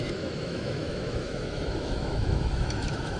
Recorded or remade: remade